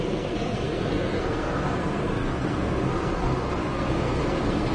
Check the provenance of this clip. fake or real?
fake